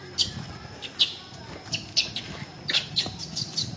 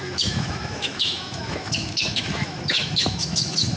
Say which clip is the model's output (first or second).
second